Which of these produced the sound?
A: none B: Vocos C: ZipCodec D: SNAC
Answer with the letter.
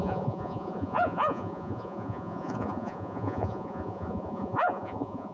B